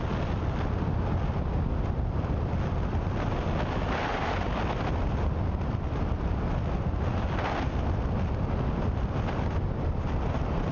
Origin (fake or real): real